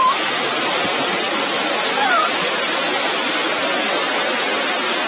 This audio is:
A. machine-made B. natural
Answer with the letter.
B